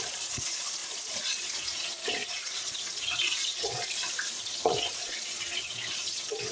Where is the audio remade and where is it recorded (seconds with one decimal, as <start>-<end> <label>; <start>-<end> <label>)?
0.0-6.5 remade